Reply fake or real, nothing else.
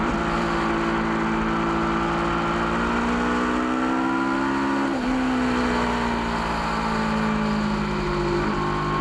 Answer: real